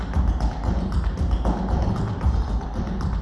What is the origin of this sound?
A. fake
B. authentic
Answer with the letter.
B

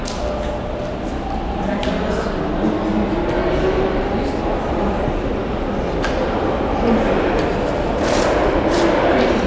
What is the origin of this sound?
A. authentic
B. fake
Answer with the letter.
A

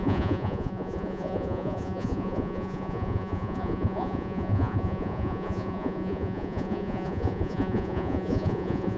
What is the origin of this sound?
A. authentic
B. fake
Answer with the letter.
B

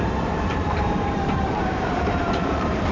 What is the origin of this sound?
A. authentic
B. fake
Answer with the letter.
B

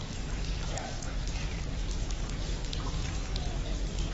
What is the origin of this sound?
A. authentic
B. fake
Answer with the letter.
B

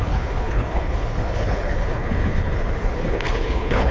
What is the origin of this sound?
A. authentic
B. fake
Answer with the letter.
B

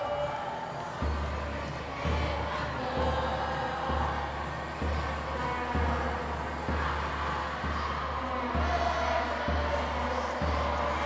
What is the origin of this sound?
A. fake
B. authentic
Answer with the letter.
B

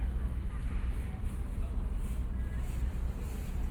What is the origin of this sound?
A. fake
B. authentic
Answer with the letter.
B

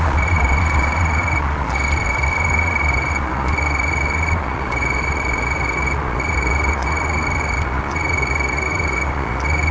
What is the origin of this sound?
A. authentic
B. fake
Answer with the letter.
B